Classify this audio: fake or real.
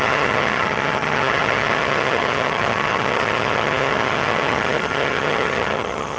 fake